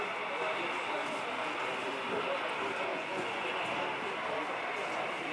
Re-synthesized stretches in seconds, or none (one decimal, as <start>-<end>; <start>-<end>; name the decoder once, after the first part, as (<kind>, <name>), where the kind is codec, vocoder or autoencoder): 2.9-3.6 (vocoder, Vocos)